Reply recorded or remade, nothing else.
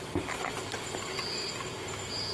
recorded